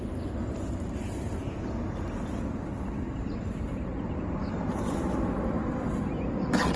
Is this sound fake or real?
fake